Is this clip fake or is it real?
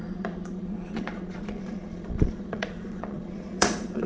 fake